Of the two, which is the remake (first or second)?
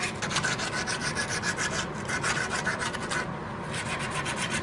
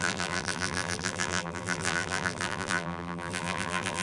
second